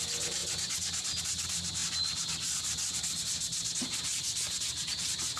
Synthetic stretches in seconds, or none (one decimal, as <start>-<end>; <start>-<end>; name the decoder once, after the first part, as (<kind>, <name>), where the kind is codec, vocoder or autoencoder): none